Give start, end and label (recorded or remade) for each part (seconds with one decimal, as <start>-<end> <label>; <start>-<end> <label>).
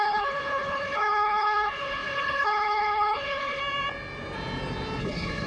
0.0-3.6 remade; 3.6-5.0 recorded; 5.0-5.5 remade